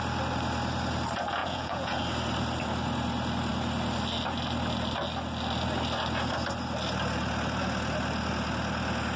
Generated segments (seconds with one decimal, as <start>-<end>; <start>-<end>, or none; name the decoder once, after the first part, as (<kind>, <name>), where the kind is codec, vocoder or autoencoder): 1.4-2.0 (vocoder, Vocos)